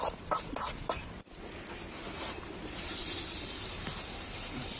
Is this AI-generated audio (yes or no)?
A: no